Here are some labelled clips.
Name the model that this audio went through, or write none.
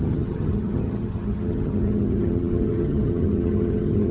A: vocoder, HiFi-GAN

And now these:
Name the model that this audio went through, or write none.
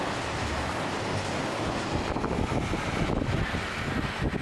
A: none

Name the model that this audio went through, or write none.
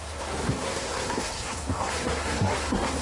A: codec, SNAC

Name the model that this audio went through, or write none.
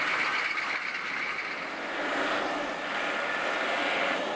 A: none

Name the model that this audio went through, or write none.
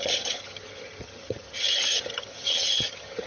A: vocoder, HiFi-GAN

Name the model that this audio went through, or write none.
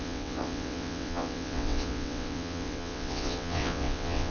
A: vocoder, WaveNeXt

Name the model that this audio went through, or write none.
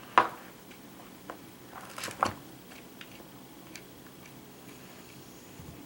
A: none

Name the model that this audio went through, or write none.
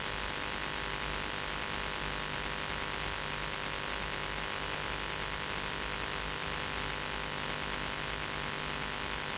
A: none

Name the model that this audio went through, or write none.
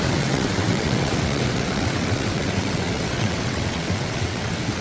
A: vocoder, WaveNeXt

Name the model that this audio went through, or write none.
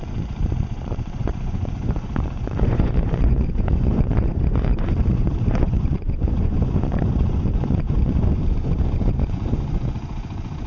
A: vocoder, Vocos